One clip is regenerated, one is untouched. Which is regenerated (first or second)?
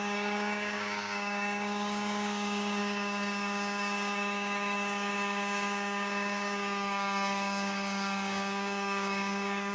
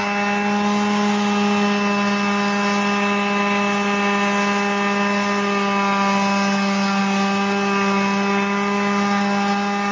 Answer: first